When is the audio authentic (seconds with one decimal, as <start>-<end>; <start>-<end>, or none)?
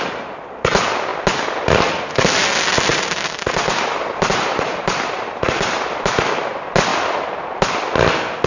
0.0-2.9; 6.1-8.5